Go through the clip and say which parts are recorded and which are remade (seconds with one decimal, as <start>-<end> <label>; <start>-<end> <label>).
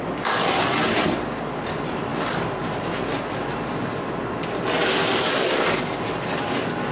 0.0-6.9 recorded